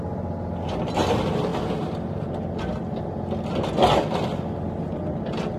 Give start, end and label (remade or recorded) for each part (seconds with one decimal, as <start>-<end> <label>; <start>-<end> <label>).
0.0-5.6 recorded